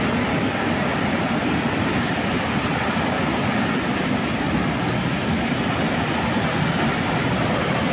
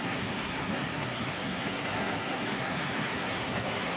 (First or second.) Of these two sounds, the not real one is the second